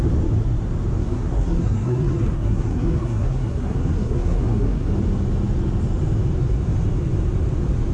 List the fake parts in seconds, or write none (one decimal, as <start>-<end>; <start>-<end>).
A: 1.0-4.9